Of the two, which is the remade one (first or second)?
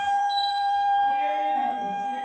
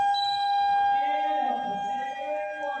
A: first